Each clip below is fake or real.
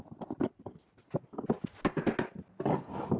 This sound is real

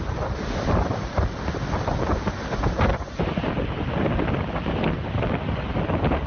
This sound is real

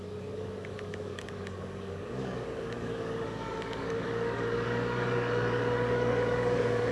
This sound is fake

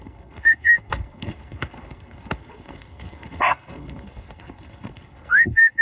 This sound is fake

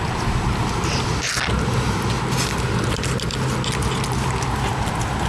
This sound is real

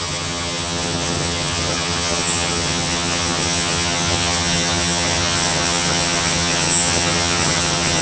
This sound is fake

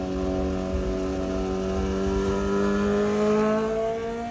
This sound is real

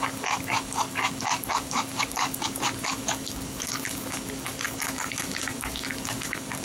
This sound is fake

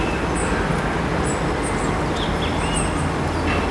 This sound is real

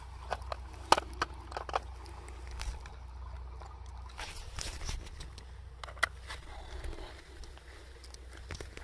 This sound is real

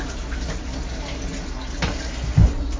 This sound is real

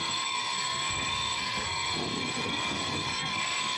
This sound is fake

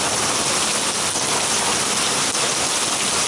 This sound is real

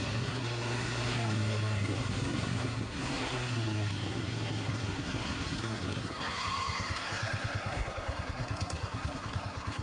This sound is fake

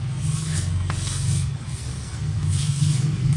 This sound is fake